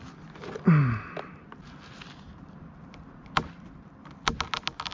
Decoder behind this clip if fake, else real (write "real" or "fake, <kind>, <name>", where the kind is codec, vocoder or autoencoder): real